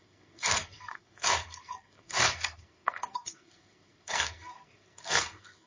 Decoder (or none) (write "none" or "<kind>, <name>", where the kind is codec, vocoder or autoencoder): codec, SNAC